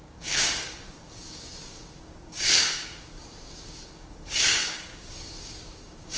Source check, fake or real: fake